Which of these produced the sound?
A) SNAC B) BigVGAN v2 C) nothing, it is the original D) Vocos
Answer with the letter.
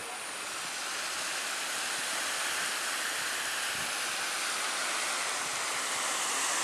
C